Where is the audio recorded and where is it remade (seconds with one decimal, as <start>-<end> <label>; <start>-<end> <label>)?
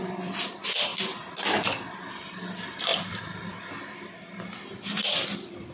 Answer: 0.0-0.9 recorded; 0.9-2.1 remade; 2.1-2.9 recorded; 2.9-4.6 remade; 4.6-5.7 recorded